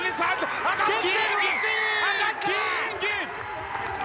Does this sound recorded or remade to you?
recorded